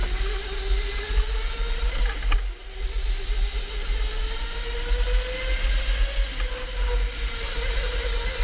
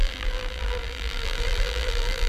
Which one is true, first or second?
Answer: first